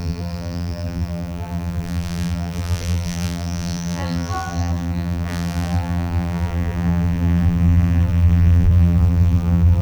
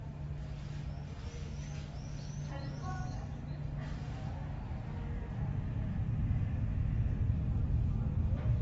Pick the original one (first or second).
second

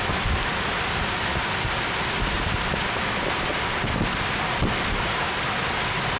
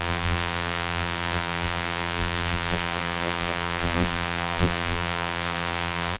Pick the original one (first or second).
first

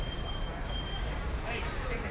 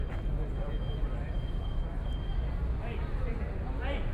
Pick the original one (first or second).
second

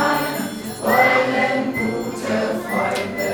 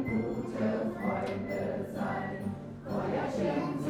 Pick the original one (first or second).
first